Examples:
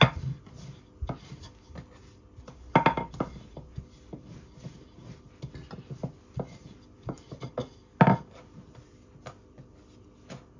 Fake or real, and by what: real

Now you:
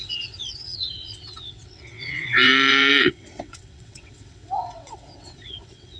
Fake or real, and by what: fake, vocoder, WaveNeXt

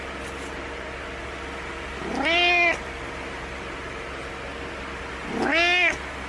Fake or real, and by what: real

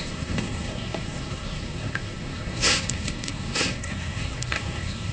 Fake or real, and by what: fake, codec, SNAC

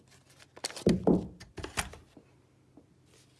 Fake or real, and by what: real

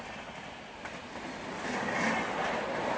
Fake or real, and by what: real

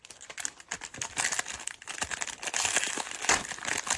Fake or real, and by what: real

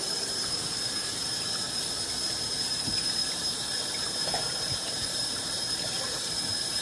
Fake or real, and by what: fake, vocoder, BigVGAN v2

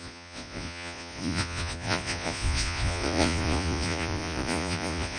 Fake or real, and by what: fake, vocoder, Vocos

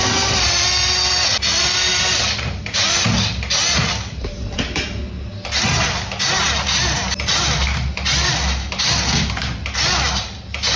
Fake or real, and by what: real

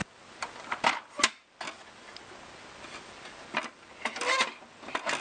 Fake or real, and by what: real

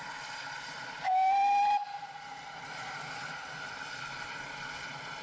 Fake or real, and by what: real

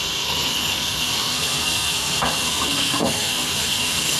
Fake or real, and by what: fake, codec, SNAC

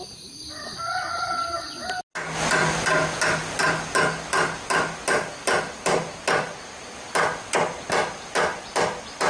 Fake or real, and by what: real